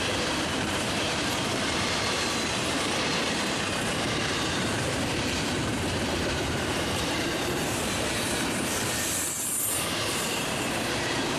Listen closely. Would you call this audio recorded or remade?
remade